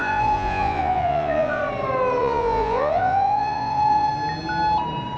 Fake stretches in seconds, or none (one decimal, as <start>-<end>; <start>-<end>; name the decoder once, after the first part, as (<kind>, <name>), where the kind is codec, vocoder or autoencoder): 0.0-1.6 (vocoder, Vocos); 2.2-4.1